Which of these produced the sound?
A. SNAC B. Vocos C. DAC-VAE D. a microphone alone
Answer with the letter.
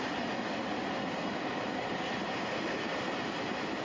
D